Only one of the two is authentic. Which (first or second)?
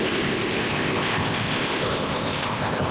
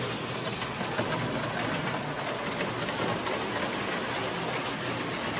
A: second